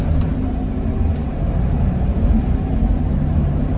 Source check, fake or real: fake